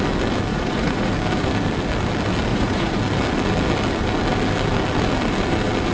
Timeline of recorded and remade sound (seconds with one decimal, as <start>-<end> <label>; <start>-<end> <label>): 0.0-0.5 recorded; 0.5-1.1 remade; 1.1-2.5 recorded; 2.5-3.0 remade; 3.0-5.9 recorded